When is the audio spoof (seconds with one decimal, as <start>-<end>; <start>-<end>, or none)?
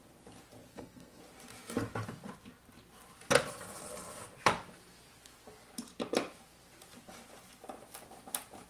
0.7-1.2